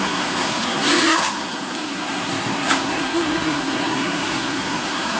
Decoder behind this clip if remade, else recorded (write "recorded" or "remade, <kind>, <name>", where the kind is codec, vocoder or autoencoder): remade, codec, SNAC